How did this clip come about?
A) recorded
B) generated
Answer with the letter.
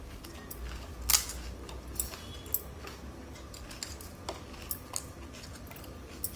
A